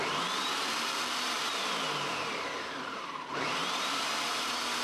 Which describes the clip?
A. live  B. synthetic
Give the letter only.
B